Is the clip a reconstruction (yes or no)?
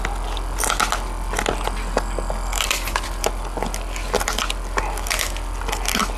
no